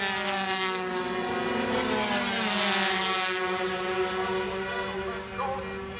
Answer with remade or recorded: recorded